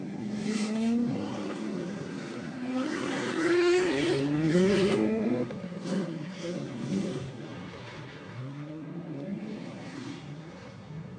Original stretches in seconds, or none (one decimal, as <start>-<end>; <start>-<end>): none